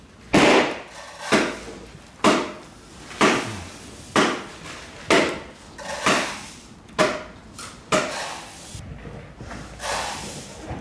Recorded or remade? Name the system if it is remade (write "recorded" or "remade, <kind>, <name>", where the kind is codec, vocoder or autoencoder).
recorded